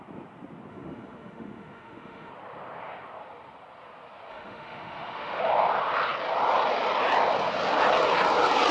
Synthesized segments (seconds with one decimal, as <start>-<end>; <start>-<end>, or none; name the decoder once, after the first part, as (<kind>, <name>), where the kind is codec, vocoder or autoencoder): 0.7-2.3 (autoencoder, DAC-VAE); 4.3-5.4

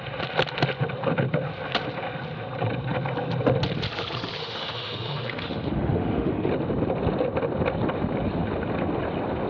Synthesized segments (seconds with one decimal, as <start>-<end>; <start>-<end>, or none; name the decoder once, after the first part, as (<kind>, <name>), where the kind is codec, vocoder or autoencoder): 4.4-6.5 (autoencoder, DAC-VAE)

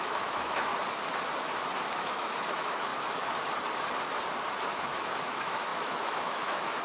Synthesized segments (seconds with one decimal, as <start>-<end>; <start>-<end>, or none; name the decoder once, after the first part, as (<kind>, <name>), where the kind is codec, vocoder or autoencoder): 0.0-0.7 (autoencoder, DAC-VAE); 2.0-2.9; 4.7-6.8